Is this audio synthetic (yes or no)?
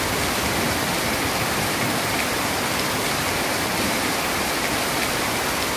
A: yes